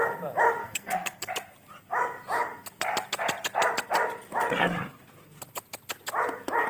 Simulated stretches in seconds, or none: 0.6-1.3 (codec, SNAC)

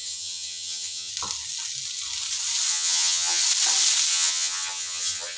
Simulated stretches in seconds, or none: 0.0-1.1 (vocoder, HiFi-GAN); 2.7-3.4; 4.1-5.4

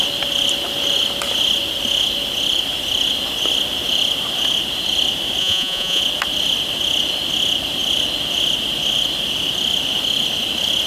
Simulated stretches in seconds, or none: 5.4-6.0 (vocoder, Vocos)